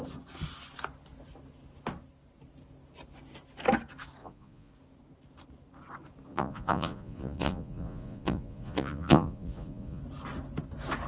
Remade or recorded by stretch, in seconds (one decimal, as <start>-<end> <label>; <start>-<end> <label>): 0.0-4.2 recorded; 4.2-4.7 remade; 4.7-6.3 recorded; 6.3-10.0 remade; 10.0-11.1 recorded